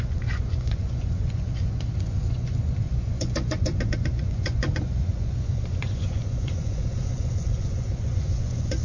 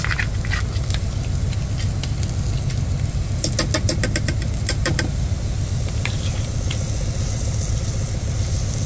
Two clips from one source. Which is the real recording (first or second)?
second